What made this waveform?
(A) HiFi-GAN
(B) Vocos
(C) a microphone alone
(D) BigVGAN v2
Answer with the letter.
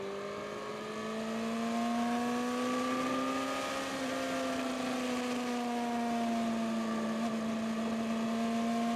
C